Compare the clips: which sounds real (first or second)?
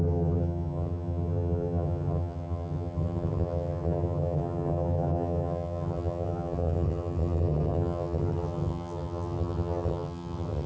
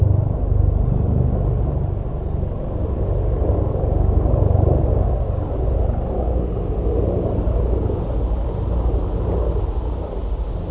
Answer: second